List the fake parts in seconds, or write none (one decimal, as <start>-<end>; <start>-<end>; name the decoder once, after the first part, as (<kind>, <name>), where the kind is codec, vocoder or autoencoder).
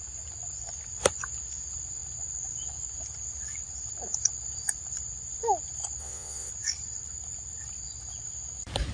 6.0-6.5 (vocoder, WaveNeXt)